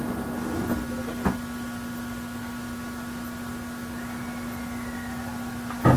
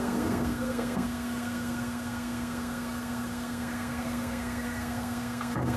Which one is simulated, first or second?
second